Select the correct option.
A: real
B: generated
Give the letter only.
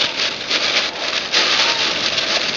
A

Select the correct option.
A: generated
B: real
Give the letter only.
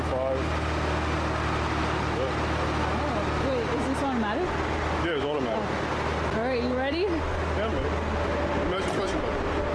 B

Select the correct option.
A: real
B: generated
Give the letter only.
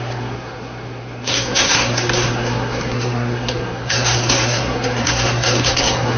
B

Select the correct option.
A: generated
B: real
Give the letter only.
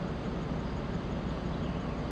B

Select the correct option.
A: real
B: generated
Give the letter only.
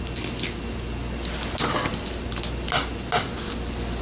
A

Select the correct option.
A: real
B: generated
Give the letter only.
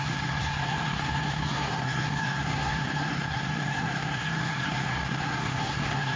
B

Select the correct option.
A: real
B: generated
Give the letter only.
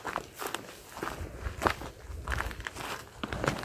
A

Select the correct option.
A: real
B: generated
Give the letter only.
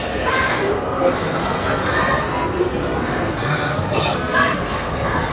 B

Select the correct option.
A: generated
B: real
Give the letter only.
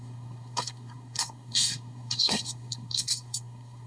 A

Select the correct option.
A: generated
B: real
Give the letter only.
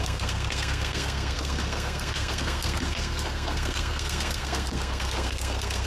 A